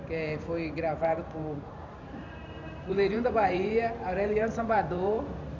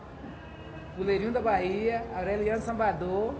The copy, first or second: first